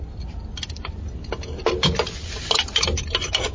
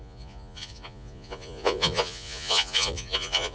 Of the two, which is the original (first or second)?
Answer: first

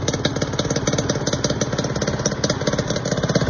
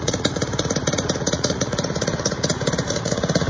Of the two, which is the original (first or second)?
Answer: first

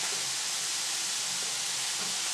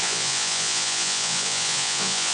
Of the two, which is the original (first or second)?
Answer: first